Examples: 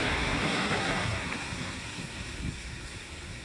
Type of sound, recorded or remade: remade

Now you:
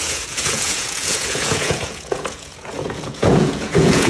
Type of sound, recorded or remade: remade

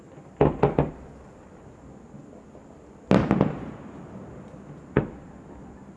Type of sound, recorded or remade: recorded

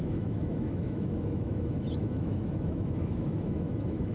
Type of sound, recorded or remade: remade